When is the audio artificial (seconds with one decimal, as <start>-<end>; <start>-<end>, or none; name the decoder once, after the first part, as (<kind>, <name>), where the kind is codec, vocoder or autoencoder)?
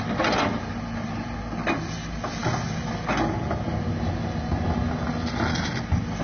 none